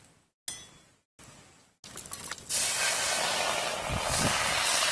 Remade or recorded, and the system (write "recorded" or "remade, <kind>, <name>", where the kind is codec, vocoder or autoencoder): recorded